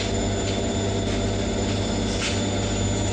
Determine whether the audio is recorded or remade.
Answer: recorded